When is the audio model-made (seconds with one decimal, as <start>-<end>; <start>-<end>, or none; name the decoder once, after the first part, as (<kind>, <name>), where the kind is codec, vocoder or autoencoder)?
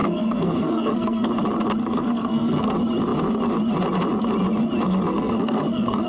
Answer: 0.0-1.3 (codec, SNAC); 1.8-2.7; 5.1-6.1